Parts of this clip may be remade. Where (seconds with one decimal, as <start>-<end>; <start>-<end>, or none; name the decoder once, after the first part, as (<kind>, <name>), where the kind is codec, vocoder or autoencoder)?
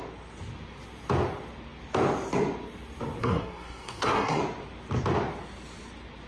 3.2-4.4 (codec, SNAC)